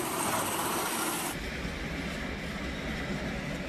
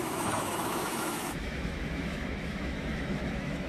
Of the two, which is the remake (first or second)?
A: second